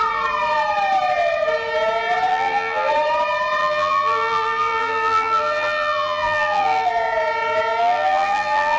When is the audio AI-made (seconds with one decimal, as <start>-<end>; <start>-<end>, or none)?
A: 2.3-2.9; 3.6-6.9; 7.8-8.8